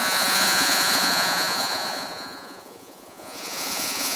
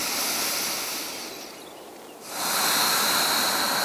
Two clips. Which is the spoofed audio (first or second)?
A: first